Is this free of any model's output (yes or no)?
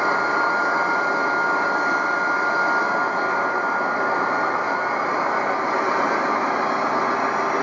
yes